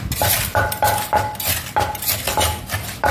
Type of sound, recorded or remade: recorded